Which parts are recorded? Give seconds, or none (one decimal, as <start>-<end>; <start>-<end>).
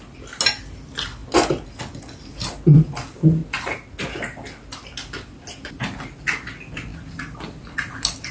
0.0-8.3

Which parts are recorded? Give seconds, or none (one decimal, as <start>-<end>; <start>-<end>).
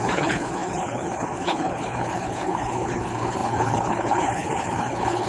none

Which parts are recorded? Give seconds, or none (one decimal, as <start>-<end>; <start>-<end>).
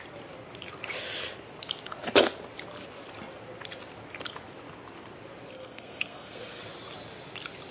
0.0-5.5; 6.6-7.7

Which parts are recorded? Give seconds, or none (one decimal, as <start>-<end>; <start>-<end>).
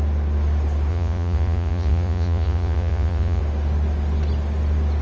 0.0-0.9; 3.4-5.0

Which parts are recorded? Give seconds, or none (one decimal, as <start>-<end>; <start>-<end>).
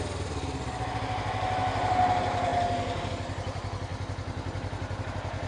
0.0-5.5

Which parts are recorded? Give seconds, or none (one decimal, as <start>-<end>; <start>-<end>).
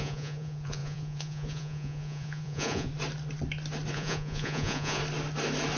2.9-3.9; 5.0-5.8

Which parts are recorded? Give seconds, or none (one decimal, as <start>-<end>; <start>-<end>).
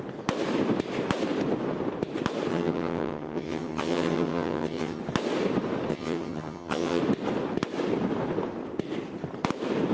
0.0-2.5; 5.0-5.9; 7.0-9.9